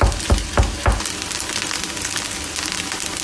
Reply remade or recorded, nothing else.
recorded